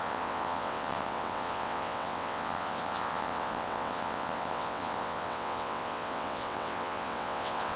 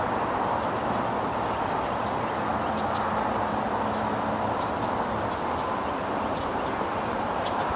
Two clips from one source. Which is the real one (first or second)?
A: second